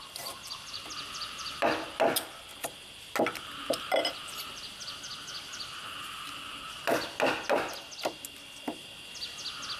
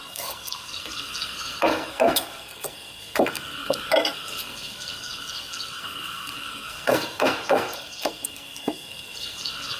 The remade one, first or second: second